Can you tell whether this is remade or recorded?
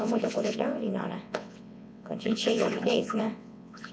remade